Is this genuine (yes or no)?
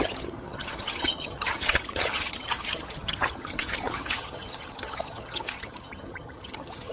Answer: no